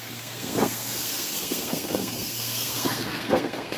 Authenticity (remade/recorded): remade